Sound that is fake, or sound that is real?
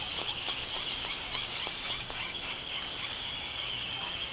fake